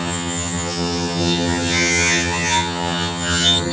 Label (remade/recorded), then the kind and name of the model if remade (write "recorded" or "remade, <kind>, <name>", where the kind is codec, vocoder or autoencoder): remade, vocoder, HiFi-GAN